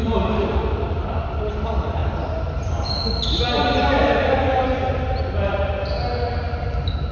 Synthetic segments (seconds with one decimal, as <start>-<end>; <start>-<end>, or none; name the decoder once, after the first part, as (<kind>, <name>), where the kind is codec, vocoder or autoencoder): 0.0-2.0 (vocoder, BigVGAN v2); 6.3-7.1